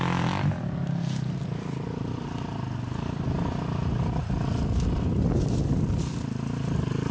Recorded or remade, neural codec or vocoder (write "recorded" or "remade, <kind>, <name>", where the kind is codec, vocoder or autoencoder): recorded